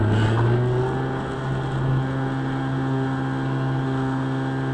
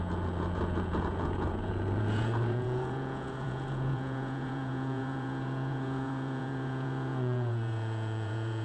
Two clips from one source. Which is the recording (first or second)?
first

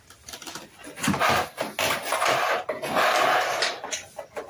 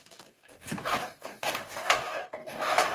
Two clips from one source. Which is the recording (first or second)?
first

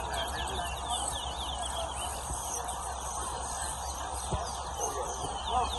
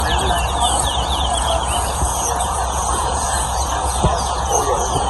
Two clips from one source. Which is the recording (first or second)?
first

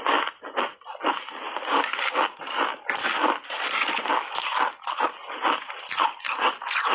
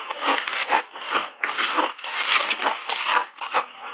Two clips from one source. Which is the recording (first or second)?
first